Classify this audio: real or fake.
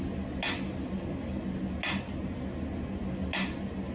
real